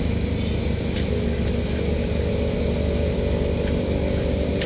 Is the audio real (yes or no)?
yes